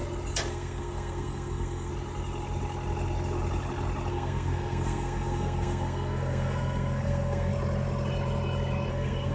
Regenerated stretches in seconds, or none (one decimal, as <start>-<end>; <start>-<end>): 0.5-1.9; 4.1-7.5; 8.9-9.3